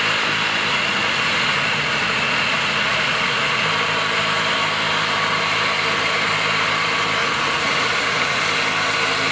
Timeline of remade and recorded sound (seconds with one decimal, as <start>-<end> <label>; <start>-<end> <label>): 0.0-0.7 recorded; 0.7-3.6 remade; 3.6-7.2 recorded; 7.2-8.4 remade; 8.4-9.3 recorded